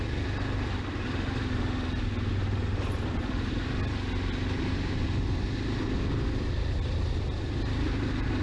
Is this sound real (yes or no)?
yes